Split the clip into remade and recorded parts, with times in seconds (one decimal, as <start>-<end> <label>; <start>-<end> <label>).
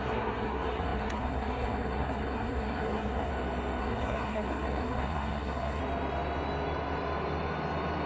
0.0-3.3 remade; 3.3-3.8 recorded; 3.8-5.8 remade; 5.8-8.1 recorded